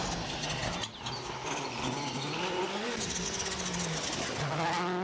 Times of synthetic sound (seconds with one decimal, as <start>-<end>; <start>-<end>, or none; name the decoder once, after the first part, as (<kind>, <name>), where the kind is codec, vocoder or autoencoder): none